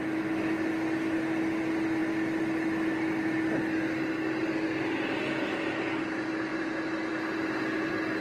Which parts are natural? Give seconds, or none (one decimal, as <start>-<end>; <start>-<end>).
0.0-8.2